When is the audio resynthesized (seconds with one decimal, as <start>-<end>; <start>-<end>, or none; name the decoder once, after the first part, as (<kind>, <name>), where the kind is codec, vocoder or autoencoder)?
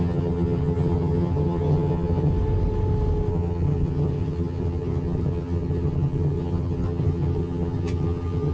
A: 0.0-2.3 (vocoder, HiFi-GAN); 3.3-8.5